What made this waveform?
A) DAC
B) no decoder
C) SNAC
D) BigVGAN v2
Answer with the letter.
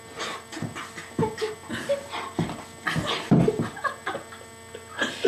B